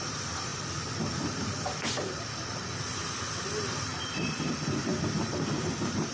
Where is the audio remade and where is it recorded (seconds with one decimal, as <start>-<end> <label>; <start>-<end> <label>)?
0.0-6.1 remade